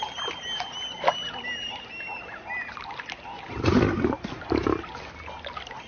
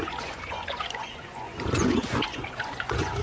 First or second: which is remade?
second